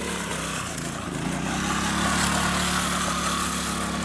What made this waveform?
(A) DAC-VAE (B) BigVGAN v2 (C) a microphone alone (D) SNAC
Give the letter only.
C